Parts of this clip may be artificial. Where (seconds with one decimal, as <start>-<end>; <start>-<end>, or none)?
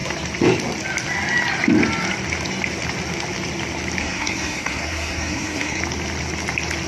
4.0-5.8